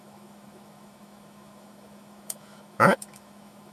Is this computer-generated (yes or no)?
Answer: yes